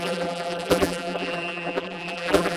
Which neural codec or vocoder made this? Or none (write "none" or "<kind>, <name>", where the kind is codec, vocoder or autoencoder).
vocoder, BigVGAN v2